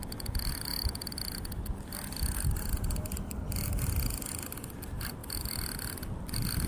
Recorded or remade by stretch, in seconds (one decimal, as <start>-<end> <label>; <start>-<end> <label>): 0.0-6.7 recorded